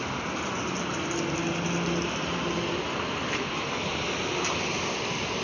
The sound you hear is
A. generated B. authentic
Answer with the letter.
B